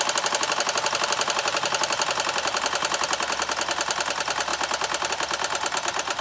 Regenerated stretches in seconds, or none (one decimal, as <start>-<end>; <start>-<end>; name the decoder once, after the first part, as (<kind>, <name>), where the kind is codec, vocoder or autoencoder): none